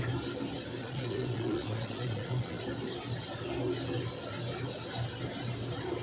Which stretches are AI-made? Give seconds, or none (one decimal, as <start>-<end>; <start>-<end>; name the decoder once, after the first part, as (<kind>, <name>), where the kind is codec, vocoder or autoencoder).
0.8-2.6 (vocoder, Vocos)